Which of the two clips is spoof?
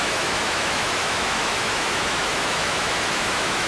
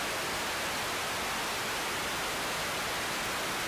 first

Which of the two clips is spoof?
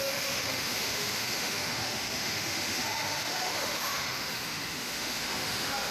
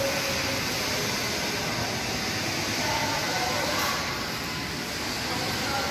first